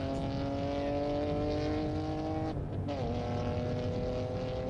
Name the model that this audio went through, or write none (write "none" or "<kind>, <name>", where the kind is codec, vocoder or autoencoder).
none